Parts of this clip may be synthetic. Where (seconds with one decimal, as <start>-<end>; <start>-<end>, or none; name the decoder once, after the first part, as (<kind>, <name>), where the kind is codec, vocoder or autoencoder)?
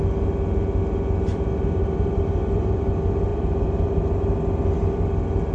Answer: 1.3-2.9 (vocoder, BigVGAN v2); 3.3-4.0